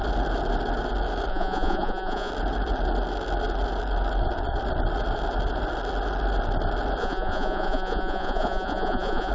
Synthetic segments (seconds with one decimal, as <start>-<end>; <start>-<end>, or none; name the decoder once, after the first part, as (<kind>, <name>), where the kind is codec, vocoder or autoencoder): 1.3-2.3 (vocoder, Vocos); 7.0-9.3